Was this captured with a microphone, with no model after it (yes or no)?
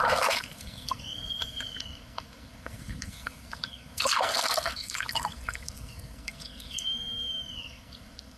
no